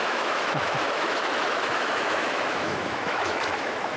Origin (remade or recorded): remade